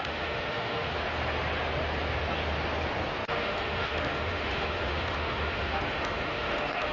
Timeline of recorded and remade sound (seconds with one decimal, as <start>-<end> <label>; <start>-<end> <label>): 0.0-0.9 remade; 0.9-3.3 recorded; 3.3-6.9 remade